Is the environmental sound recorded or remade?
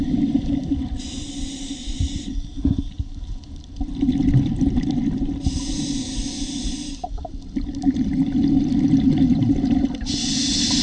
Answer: recorded